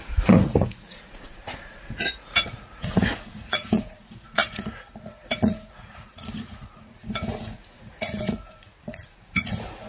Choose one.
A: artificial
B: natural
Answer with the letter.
A